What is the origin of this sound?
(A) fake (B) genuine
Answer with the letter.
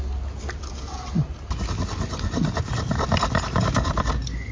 B